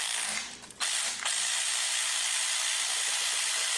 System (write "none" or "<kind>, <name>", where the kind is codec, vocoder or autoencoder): none